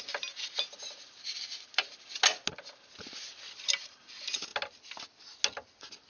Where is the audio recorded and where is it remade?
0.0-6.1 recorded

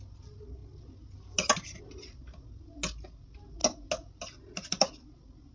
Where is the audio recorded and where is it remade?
0.0-5.5 recorded

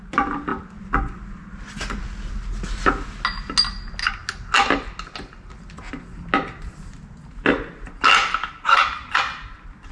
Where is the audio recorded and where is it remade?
0.0-9.9 recorded

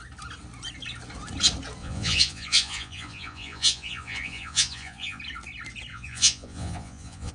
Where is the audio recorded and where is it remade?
0.0-1.8 recorded; 1.8-5.2 remade; 5.2-5.9 recorded; 5.9-7.3 remade

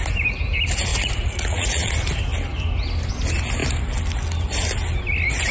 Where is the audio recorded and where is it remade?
0.0-0.9 recorded; 0.9-1.9 remade; 1.9-5.5 recorded